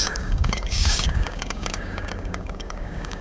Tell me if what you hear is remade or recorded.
remade